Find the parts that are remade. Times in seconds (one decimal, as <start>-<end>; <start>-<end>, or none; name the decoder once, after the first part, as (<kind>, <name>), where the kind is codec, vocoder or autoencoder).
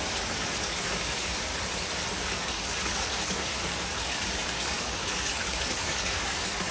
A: 0.0-1.5 (codec, DAC); 2.1-6.7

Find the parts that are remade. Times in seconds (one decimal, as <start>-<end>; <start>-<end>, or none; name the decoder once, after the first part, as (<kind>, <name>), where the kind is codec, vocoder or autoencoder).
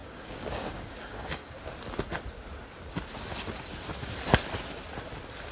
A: 0.0-1.5 (codec, DAC)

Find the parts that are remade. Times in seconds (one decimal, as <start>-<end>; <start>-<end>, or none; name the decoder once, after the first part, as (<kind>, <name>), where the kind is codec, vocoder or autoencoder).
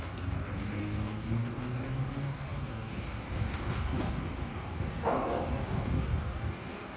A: 0.0-7.0 (codec, DAC)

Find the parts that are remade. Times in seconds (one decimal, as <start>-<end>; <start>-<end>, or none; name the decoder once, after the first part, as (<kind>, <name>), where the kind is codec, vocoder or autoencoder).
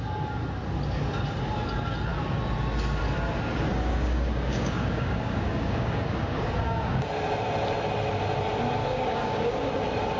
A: 3.7-7.1 (codec, DAC); 8.8-9.7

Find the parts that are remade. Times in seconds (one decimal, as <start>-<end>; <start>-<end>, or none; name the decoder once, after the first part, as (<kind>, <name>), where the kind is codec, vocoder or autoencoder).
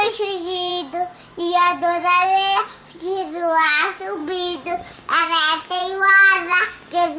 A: 0.0-0.7 (codec, DAC); 1.4-5.8; 6.7-7.2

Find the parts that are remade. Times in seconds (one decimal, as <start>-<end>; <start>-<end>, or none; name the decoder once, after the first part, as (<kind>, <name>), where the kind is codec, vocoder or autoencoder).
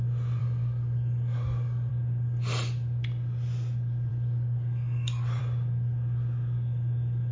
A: 0.4-1.9 (codec, DAC); 4.1-5.4